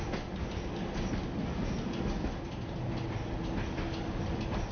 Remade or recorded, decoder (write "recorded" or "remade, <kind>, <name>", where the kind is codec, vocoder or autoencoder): recorded